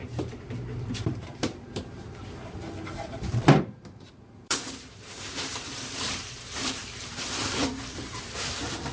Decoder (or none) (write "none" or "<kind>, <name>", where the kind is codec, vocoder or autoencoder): vocoder, BigVGAN v2